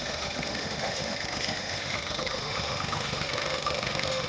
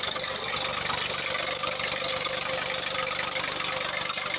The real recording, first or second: second